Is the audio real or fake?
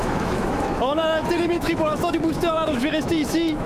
fake